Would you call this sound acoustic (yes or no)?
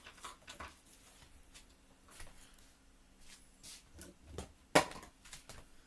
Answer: yes